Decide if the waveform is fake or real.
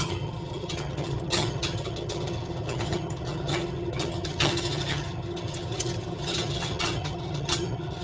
fake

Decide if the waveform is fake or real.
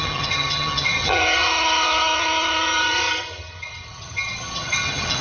fake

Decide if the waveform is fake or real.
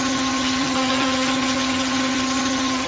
fake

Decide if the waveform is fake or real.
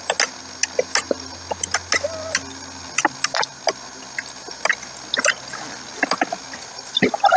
real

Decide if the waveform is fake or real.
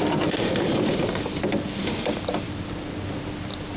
real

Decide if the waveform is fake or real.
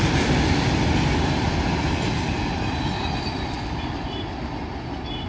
real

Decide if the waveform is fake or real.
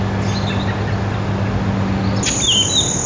real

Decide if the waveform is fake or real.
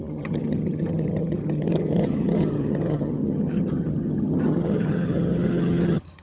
fake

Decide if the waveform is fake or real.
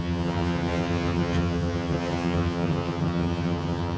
fake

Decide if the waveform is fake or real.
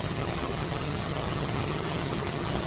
fake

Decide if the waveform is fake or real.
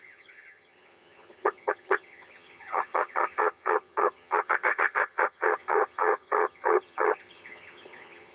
fake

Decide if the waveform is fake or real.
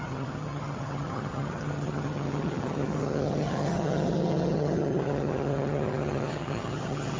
fake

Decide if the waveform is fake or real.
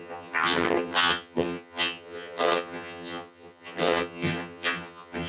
fake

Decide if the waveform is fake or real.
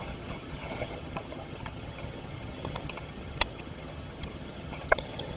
fake